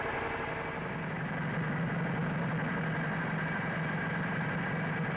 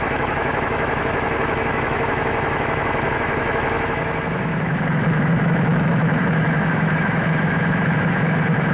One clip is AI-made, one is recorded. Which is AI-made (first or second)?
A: second